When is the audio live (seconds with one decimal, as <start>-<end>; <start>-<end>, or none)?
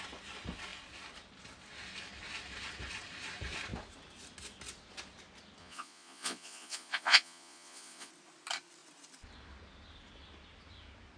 0.0-5.6; 8.1-11.2